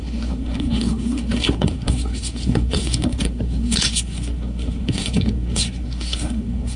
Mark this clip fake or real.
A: fake